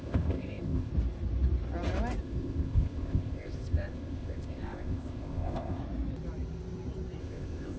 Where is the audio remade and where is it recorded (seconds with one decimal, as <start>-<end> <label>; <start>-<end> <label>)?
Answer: 0.0-0.9 remade; 0.9-2.2 recorded; 2.2-5.8 remade; 5.8-7.2 recorded; 7.2-7.8 remade